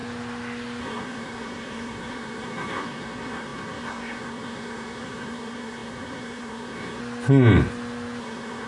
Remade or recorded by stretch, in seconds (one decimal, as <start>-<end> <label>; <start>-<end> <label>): 0.0-0.8 recorded; 0.8-7.0 remade; 7.0-8.2 recorded; 8.2-8.7 remade